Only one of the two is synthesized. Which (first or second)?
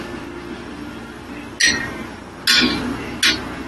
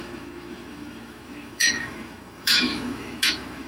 second